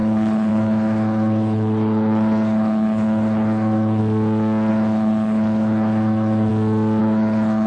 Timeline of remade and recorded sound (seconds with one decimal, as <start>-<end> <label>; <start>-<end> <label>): 0.0-4.0 remade; 4.0-4.7 recorded; 4.7-6.5 remade; 6.5-7.0 recorded; 7.0-7.7 remade

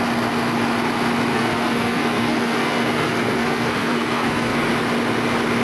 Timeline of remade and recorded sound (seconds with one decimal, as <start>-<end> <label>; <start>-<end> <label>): 0.0-1.3 recorded; 1.3-4.7 remade; 4.7-5.6 recorded

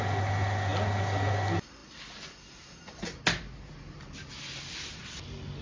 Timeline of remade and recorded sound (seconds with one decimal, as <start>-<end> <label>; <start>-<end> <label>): 0.0-5.6 recorded

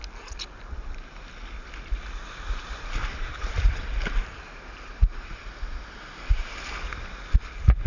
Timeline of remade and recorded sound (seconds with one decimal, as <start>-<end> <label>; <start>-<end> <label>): 0.0-3.0 recorded; 3.0-5.6 remade; 5.6-7.9 recorded

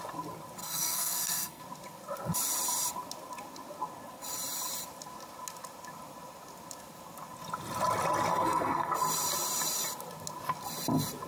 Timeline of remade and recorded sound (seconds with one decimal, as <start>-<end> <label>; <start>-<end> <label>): 0.0-0.6 recorded; 0.6-1.6 remade; 1.6-8.3 recorded; 8.3-8.9 remade; 8.9-11.3 recorded